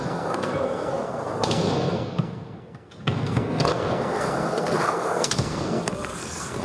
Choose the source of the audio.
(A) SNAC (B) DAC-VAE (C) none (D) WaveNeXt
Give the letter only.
A